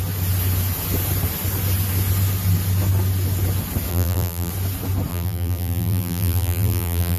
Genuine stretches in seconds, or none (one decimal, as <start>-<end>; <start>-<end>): 0.0-3.9; 4.5-5.1

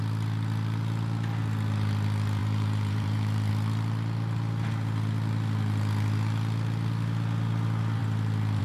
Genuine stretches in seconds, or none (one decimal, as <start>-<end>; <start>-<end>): 0.0-2.4; 3.5-8.6